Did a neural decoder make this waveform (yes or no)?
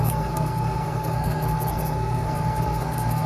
yes